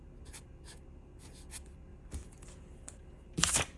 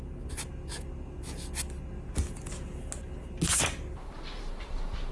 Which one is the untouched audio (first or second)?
second